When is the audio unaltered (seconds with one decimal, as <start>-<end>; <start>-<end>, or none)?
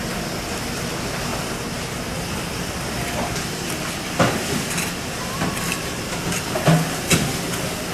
0.0-1.3; 6.0-7.9